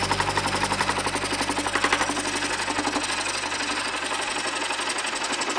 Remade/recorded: recorded